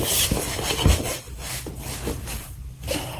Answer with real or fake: real